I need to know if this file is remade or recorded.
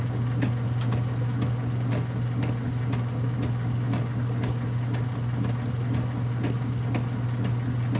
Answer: recorded